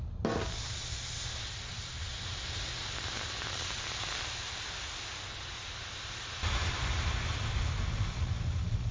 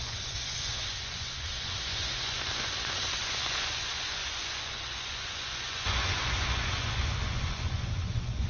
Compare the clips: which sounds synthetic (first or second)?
second